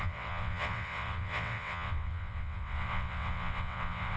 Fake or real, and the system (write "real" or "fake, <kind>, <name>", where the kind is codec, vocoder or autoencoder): fake, vocoder, WaveNeXt